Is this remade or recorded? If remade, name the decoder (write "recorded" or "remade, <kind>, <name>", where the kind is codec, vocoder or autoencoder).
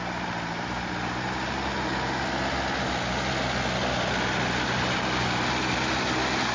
recorded